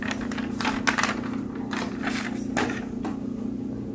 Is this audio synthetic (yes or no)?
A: no